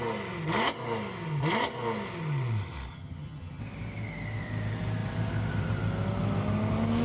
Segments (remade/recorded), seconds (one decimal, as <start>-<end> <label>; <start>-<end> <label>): 0.0-2.9 recorded; 2.9-3.6 remade; 3.6-7.0 recorded